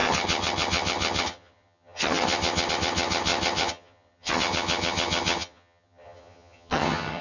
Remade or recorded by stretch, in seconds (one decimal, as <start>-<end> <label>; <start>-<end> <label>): 0.0-7.2 remade